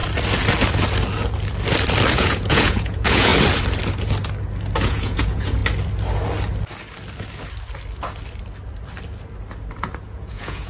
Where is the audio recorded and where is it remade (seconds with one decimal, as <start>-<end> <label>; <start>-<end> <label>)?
0.0-2.1 recorded; 2.1-3.3 remade; 3.3-4.8 recorded; 4.8-5.6 remade; 5.6-10.0 recorded; 10.0-10.7 remade